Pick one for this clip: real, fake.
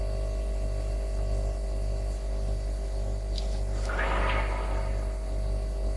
real